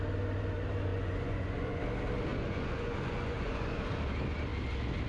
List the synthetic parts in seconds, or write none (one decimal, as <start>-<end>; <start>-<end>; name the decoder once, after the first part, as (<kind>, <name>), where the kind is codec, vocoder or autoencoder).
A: 0.9-1.8 (vocoder, Vocos); 2.3-3.8